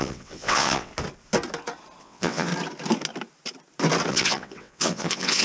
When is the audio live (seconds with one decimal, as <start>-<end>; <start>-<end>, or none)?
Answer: 0.9-2.0; 2.5-4.1

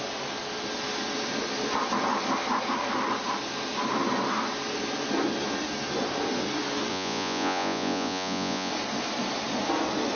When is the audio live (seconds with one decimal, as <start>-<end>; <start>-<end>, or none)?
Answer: 0.0-6.9; 8.7-10.2

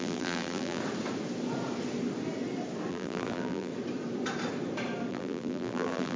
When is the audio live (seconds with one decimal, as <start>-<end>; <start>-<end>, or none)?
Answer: 0.8-2.9; 3.7-5.1

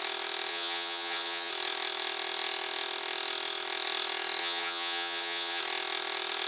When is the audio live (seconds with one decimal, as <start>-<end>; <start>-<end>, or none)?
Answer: 0.0-0.5; 1.5-4.4; 5.6-6.5